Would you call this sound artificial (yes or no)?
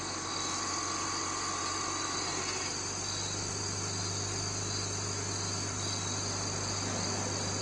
no